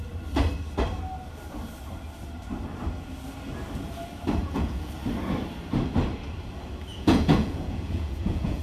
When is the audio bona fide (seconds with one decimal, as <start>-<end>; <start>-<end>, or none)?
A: 0.0-4.4; 4.9-6.9